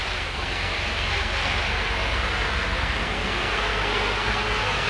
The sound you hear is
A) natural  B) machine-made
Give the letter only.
B